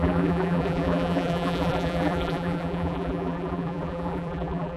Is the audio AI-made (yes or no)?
yes